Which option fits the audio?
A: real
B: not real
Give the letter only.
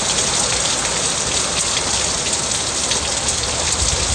A